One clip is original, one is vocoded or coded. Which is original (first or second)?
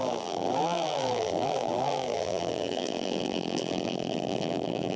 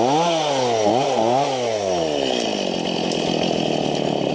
second